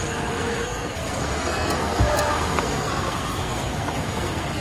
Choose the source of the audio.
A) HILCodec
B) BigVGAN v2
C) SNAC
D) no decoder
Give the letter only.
C